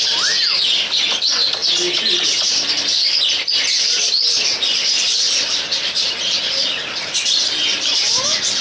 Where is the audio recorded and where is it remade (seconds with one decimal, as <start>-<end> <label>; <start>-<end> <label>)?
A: 0.0-8.6 recorded